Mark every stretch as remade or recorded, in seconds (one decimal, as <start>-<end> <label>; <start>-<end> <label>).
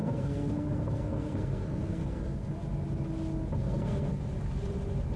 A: 0.0-2.5 remade; 2.5-3.6 recorded; 3.6-4.2 remade; 4.2-5.2 recorded